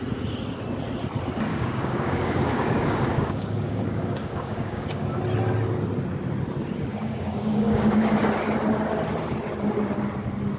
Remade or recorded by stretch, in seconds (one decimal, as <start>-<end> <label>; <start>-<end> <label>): 0.0-1.5 recorded; 1.5-5.1 remade; 5.1-6.9 recorded; 6.9-8.0 remade; 8.0-10.6 recorded